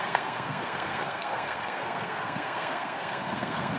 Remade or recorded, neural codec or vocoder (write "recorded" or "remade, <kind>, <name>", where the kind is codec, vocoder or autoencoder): remade, codec, SNAC